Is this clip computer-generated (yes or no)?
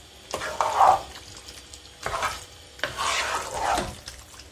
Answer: no